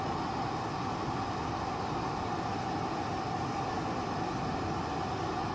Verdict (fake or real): real